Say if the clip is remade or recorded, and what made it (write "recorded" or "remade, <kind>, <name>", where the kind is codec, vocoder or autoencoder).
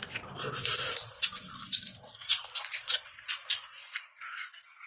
recorded